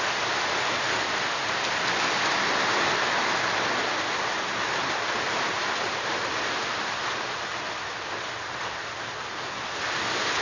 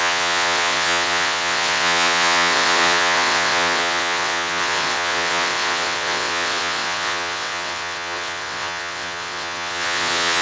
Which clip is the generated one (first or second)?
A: second